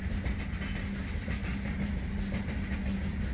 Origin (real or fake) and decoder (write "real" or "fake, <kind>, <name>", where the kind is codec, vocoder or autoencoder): real